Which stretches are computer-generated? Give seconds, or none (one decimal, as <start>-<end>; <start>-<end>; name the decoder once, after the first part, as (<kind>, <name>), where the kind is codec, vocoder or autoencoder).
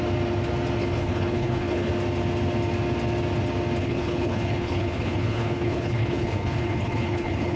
0.8-1.9 (codec, HILCodec); 3.8-7.6